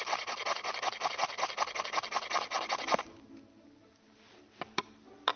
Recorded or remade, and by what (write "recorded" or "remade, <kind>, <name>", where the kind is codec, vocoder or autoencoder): recorded